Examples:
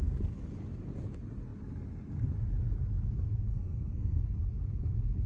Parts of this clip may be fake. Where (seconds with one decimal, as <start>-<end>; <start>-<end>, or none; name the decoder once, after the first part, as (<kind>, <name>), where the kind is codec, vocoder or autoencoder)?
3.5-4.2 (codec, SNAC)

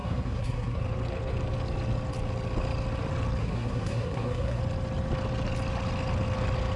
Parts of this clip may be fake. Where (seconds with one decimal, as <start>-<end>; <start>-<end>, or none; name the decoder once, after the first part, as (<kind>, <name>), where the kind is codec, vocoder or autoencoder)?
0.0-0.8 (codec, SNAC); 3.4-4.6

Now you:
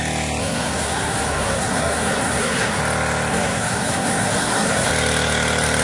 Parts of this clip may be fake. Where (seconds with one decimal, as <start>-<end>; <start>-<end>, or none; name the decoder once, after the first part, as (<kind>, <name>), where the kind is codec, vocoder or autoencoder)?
0.4-2.8 (codec, SNAC); 3.3-4.9